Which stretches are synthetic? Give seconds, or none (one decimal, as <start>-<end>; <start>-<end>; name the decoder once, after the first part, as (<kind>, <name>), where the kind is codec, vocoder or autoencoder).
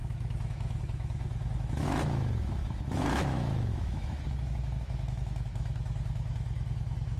0.0-7.2 (autoencoder, DAC-VAE)